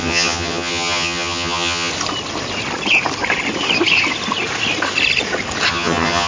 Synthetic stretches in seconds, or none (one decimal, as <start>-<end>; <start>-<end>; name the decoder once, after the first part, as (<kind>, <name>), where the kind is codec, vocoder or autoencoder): 0.0-1.9 (vocoder, HiFi-GAN); 5.7-6.3